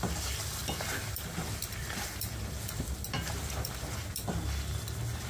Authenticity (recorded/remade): recorded